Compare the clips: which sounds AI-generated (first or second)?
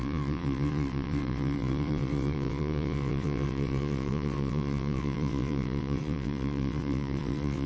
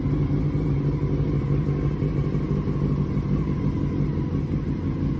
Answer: first